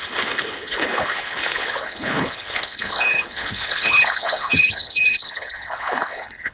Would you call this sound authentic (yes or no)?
no